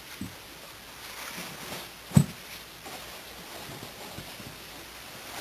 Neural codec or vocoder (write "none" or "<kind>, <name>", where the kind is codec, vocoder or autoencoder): none